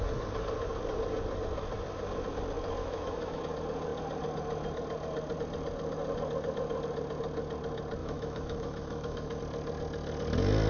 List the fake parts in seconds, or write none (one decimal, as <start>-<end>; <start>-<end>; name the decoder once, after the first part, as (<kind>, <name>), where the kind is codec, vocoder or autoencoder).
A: 2.8-3.4 (autoencoder, DAC-VAE); 8.0-9.4